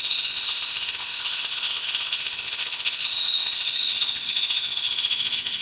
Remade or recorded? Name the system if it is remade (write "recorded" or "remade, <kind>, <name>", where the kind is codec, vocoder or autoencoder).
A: remade, codec, ZipCodec